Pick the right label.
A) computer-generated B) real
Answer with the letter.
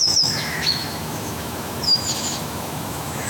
A